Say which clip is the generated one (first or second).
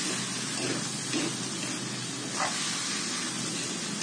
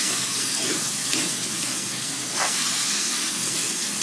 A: second